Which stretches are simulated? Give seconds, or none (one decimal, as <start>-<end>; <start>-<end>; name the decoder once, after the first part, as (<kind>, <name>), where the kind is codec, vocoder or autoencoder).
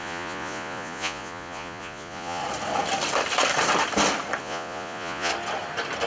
0.0-2.4 (vocoder, Vocos); 4.4-5.3